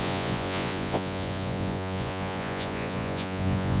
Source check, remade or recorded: remade